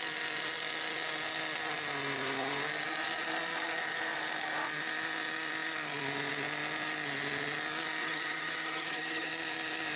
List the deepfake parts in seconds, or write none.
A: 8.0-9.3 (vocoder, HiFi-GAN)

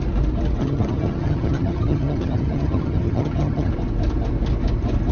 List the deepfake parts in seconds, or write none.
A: 0.6-3.7 (vocoder, HiFi-GAN)

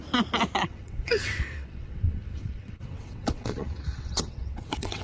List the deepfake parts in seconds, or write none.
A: 0.6-5.0 (vocoder, WaveNeXt)

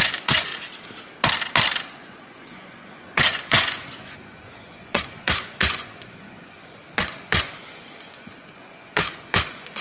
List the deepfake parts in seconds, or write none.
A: 0.0-0.5 (vocoder, Vocos); 1.8-9.8